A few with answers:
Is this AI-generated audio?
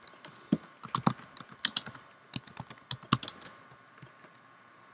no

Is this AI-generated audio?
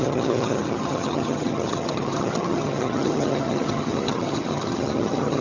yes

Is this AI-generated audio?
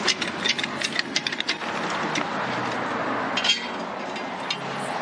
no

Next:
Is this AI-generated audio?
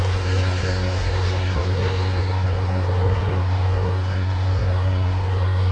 yes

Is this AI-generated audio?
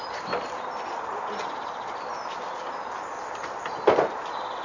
no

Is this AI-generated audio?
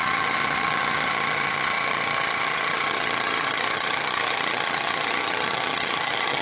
yes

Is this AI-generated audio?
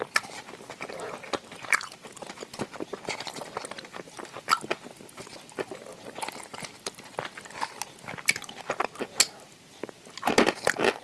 no